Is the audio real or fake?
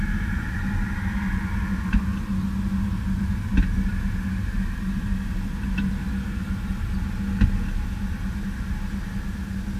real